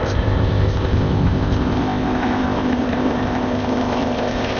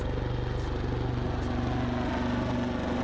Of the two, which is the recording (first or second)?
second